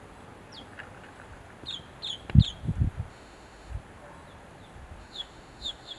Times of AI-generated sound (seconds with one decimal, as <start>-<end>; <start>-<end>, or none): 3.1-3.7; 5.0-6.0